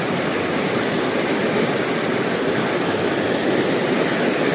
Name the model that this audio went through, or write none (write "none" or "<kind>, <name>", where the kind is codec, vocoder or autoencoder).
none